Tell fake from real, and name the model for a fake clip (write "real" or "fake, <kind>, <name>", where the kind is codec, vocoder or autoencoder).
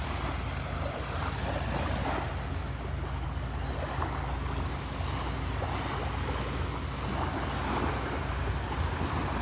real